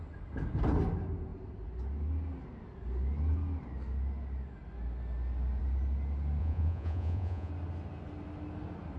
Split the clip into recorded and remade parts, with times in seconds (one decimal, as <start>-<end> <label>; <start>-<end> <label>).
0.0-6.4 recorded; 6.4-7.5 remade; 7.5-9.0 recorded